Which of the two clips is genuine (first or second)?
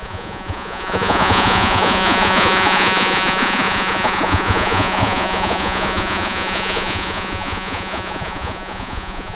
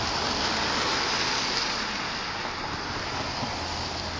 second